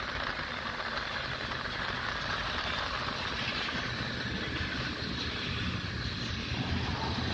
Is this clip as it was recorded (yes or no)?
yes